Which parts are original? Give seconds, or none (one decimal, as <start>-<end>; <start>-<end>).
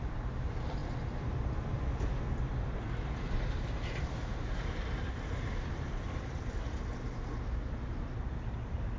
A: 0.0-9.0